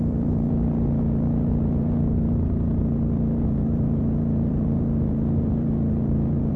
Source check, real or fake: fake